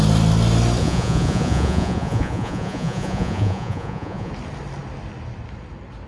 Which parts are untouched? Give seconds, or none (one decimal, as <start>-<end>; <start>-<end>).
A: 0.0-0.8; 4.3-6.1